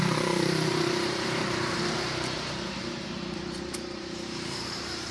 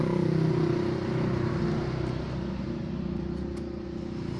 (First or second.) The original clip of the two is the second